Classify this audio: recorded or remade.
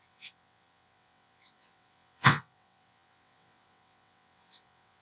remade